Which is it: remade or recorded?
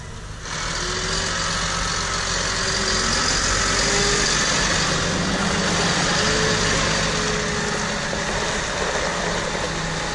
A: recorded